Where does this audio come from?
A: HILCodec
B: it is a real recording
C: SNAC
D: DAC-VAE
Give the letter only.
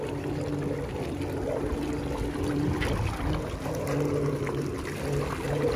B